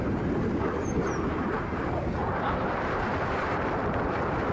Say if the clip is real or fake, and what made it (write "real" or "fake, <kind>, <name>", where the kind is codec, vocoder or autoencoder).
fake, vocoder, BigVGAN v2